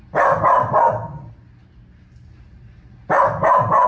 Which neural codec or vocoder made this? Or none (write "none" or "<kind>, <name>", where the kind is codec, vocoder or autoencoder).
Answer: none